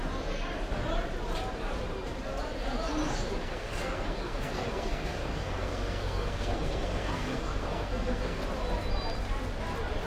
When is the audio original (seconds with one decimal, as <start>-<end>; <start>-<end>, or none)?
0.0-3.4; 8.4-10.1